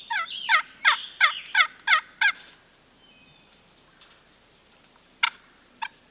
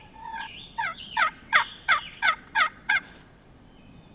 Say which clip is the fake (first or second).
second